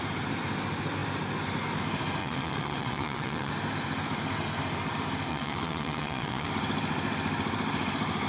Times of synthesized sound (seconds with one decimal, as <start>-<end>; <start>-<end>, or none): 2.2-3.5; 5.3-6.5